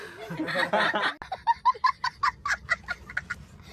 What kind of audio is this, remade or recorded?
recorded